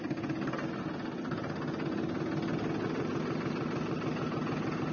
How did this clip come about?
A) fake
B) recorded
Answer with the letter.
B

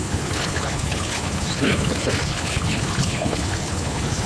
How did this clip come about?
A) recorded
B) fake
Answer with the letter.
B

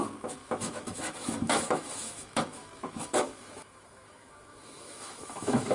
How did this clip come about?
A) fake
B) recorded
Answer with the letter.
A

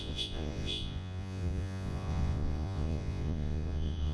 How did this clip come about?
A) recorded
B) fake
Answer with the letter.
B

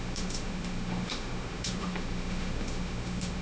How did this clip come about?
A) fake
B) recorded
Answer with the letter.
A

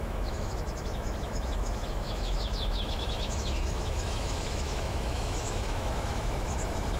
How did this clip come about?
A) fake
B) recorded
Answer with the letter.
A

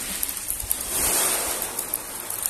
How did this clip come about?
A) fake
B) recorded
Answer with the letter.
B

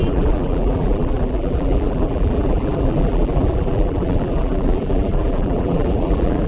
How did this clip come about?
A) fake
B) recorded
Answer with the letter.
A